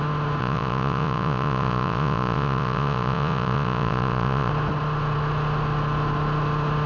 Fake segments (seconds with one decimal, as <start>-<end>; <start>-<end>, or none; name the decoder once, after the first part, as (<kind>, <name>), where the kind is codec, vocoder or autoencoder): 0.4-4.5 (vocoder, Vocos)